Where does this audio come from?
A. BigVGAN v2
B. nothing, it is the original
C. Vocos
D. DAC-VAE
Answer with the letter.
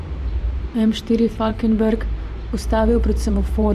A